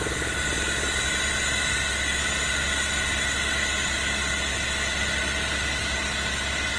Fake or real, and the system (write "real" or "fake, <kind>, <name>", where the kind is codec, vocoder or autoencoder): real